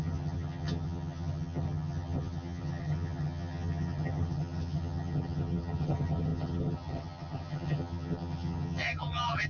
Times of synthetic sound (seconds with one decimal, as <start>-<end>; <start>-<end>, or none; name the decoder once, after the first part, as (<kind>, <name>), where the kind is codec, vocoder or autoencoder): 0.0-9.5 (vocoder, HiFi-GAN)